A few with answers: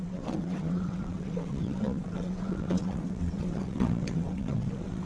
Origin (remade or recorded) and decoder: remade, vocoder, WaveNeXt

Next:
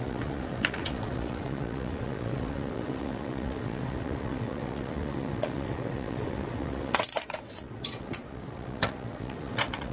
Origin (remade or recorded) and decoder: remade, vocoder, WaveNeXt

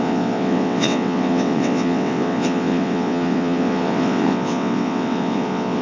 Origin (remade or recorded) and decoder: remade, vocoder, WaveNeXt